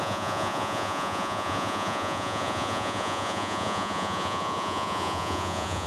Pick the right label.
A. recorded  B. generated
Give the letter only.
B